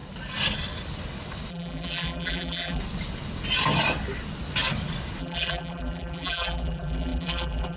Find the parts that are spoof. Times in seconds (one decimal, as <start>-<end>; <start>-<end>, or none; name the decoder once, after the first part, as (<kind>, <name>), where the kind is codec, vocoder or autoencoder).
1.5-2.8 (vocoder, BigVGAN v2); 5.2-7.8